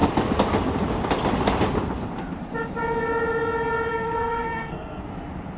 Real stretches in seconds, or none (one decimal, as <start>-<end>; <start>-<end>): 0.0-3.9; 5.1-5.6